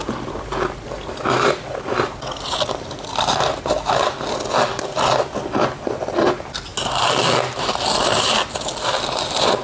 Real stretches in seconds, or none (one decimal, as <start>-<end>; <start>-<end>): 0.0-9.6